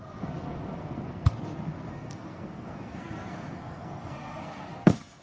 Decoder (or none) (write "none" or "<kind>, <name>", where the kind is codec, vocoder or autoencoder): codec, SNAC